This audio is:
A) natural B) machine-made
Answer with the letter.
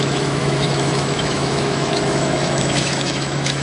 B